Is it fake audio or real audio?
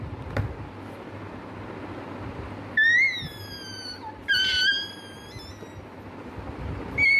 real